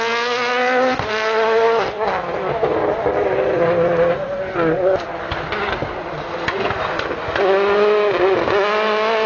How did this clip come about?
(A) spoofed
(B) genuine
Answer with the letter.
B